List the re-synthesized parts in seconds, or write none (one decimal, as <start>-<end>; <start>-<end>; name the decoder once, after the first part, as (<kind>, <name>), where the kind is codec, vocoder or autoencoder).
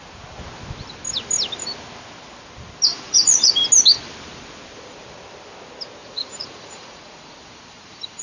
2.9-3.5 (vocoder, Vocos); 6.0-8.2